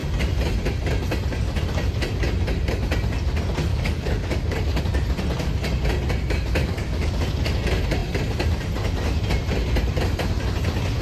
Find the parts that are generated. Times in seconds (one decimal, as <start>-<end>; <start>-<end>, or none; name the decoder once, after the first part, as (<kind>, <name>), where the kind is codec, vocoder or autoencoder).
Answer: 3.7-4.8 (codec, DAC); 6.6-7.2

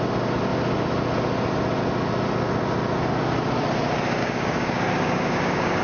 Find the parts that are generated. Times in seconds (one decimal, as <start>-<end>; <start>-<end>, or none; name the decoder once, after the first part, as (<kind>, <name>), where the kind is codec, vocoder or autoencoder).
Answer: 4.2-5.8 (codec, DAC)

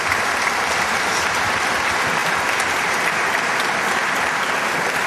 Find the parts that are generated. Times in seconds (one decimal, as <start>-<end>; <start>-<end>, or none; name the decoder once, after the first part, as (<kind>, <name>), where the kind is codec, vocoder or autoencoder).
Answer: none

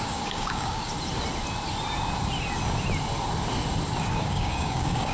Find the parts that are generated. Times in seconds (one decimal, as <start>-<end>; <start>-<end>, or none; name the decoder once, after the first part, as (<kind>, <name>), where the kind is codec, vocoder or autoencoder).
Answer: 0.0-0.9 (codec, DAC); 4.0-5.1

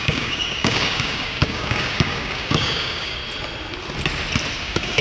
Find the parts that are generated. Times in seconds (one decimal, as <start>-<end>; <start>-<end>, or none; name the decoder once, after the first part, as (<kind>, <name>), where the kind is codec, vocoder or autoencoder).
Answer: 0.0-3.2 (codec, DAC); 4.6-5.0